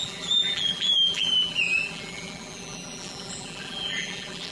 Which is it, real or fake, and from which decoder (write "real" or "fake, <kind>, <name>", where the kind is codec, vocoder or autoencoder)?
fake, vocoder, BigVGAN v2